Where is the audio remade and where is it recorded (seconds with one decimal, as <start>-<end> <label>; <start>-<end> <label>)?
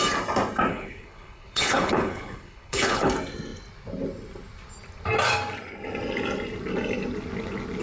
0.0-0.7 recorded; 0.7-3.1 remade; 3.1-7.8 recorded